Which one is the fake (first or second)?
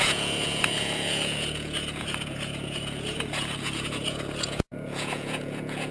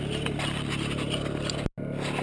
first